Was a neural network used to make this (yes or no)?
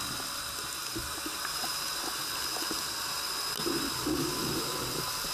no